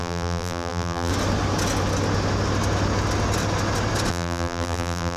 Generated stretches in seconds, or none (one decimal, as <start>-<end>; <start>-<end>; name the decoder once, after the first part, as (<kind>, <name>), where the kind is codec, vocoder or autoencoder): 0.0-1.1 (vocoder, BigVGAN v2); 4.1-5.2